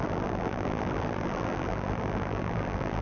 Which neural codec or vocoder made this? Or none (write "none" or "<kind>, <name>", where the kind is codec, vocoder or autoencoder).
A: vocoder, BigVGAN v2